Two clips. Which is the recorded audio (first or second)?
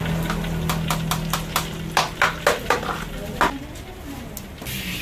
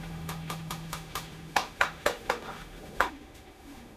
first